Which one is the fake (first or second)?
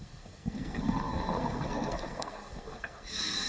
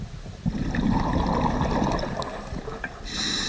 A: first